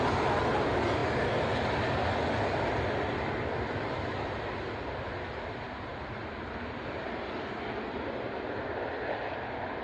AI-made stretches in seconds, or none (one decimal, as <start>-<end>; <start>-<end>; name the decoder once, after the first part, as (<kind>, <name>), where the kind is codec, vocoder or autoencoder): none